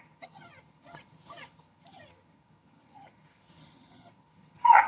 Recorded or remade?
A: remade